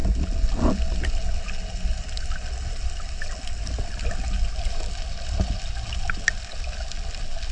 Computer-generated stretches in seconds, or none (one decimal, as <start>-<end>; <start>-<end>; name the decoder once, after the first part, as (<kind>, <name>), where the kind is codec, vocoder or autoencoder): none